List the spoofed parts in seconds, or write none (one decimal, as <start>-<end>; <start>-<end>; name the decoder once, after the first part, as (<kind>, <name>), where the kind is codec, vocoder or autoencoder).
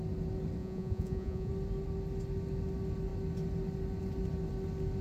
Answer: 0.6-1.5 (vocoder, Vocos)